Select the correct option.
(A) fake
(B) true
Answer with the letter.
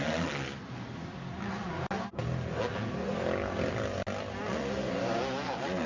B